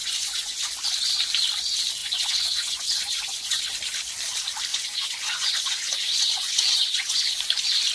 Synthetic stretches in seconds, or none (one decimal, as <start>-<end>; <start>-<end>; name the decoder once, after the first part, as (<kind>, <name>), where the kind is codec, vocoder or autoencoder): 0.0-0.7 (vocoder, Vocos); 2.0-3.6; 4.7-7.3

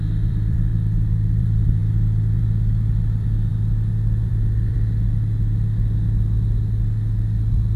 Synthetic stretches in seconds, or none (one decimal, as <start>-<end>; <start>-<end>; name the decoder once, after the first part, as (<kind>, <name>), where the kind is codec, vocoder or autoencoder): 0.0-0.7 (vocoder, BigVGAN v2); 1.4-1.8; 2.4-3.5; 4.3-7.8

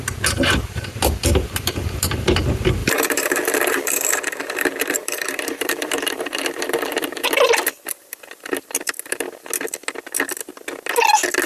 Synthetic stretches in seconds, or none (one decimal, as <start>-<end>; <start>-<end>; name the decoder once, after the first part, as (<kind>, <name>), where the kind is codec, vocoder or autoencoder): 2.8-7.3 (vocoder, BigVGAN v2)

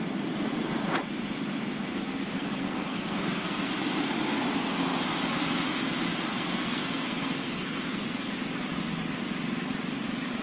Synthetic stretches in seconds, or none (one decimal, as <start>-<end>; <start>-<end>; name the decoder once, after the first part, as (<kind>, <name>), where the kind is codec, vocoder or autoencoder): 1.9-3.7 (codec, SNAC); 6.3-8.2